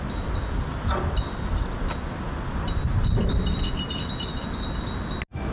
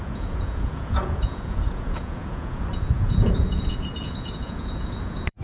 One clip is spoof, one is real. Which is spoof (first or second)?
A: second